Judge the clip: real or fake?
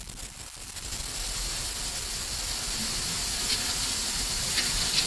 real